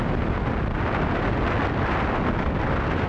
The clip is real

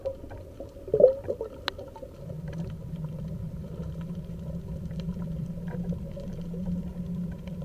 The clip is real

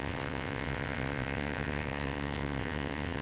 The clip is fake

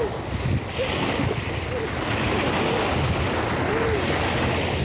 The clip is real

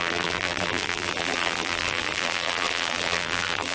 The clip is fake